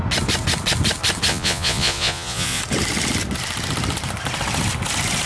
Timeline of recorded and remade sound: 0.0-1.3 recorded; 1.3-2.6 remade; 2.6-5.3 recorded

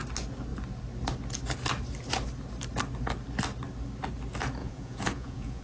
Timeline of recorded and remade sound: 0.0-4.6 recorded; 4.6-5.6 remade

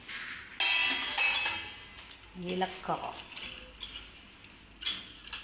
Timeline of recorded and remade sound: 0.0-5.4 recorded

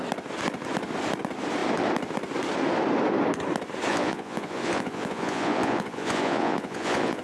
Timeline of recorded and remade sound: 0.0-3.9 recorded; 3.9-7.2 remade

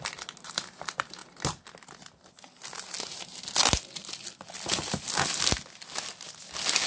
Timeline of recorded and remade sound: 0.0-6.9 recorded

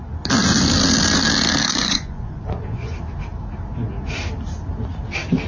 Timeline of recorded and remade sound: 0.0-1.7 recorded; 1.7-2.9 remade; 2.9-5.5 recorded

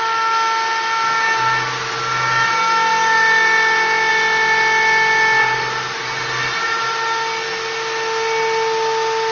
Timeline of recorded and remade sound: 0.0-9.3 recorded